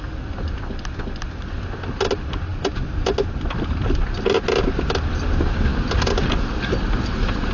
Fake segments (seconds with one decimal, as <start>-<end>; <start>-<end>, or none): none